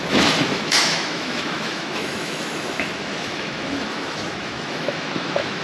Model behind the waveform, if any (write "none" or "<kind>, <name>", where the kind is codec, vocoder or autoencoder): autoencoder, DAC-VAE